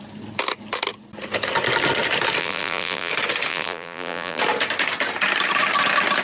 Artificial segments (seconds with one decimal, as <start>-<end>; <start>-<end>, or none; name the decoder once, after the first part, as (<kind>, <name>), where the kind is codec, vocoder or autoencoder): 2.4-3.1 (vocoder, BigVGAN v2); 3.5-4.4